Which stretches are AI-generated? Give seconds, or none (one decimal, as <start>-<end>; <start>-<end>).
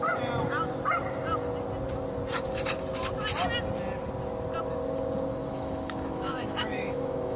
5.4-7.4